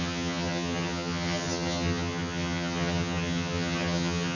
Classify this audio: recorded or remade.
remade